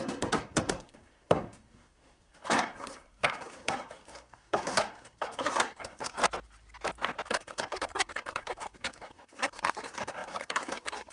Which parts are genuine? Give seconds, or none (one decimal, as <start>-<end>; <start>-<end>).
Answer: 6.2-7.3